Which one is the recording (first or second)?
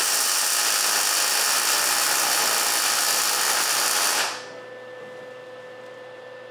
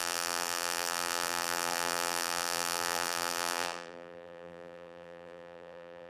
first